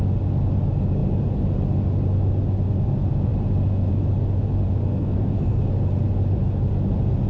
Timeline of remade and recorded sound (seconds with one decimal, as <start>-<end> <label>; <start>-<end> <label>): 0.0-4.8 recorded; 4.8-5.6 remade; 5.6-7.3 recorded